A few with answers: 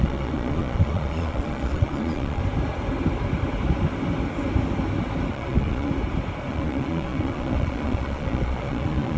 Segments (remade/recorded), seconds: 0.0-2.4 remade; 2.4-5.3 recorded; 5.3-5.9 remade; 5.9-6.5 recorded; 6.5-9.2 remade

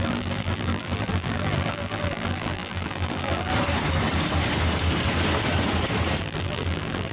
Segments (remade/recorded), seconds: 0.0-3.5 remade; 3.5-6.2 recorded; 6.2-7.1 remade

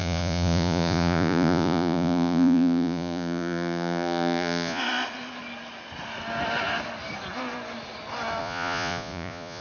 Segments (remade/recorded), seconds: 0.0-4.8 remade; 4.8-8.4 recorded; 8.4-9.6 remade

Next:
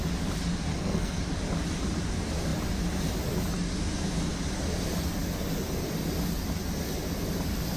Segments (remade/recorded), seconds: 0.0-0.7 recorded; 0.7-1.2 remade; 1.2-7.8 recorded